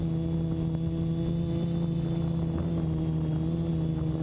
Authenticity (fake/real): real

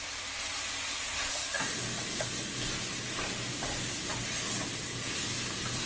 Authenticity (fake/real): real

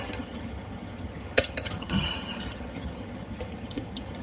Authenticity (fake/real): fake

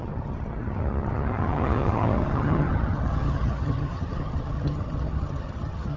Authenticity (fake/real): fake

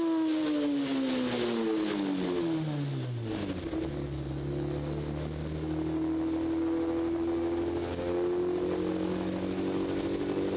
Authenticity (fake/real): real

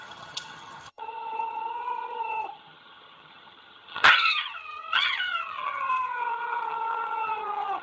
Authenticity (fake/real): fake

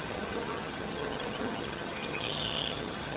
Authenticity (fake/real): fake